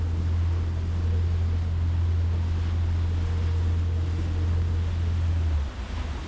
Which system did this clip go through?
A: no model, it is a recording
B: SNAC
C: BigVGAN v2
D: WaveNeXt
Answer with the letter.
A